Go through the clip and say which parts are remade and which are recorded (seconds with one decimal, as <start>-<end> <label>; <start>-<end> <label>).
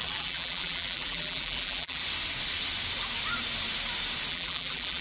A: 0.0-2.0 remade; 2.0-4.3 recorded; 4.3-5.0 remade